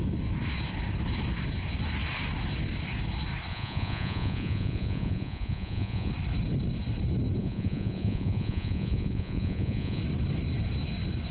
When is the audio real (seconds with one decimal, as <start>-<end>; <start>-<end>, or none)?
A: 0.0-3.5; 6.1-7.4; 10.0-11.3